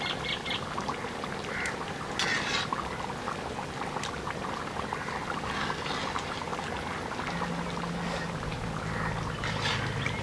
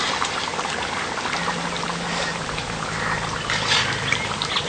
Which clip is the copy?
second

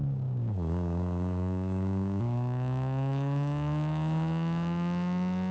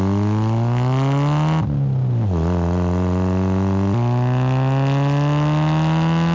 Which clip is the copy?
first